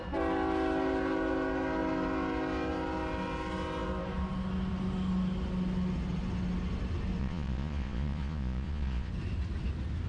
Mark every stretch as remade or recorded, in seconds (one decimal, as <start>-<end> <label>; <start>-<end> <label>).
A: 0.0-7.2 recorded; 7.2-9.1 remade; 9.1-10.1 recorded